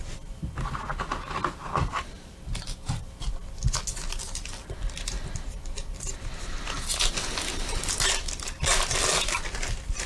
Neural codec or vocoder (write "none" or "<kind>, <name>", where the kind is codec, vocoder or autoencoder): none